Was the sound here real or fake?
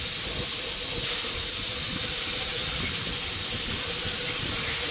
real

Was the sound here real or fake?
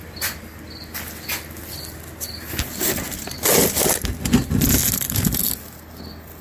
real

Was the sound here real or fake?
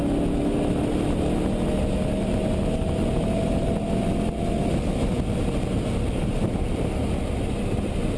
real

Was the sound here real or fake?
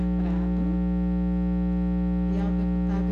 real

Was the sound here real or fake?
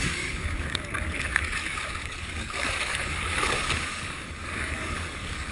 fake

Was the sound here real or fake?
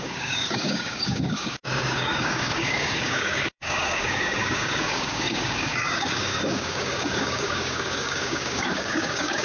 fake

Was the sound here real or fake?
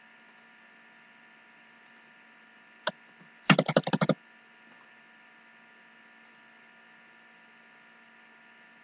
real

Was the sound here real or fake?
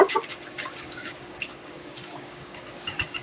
fake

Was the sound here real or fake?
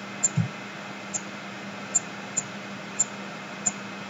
real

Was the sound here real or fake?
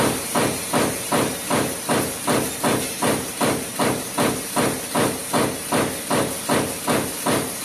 real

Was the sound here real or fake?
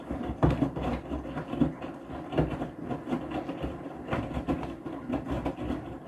real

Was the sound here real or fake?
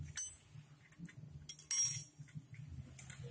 real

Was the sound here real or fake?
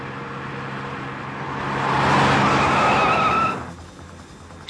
real